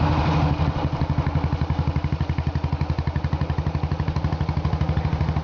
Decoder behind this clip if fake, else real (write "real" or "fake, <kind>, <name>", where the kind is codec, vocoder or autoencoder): real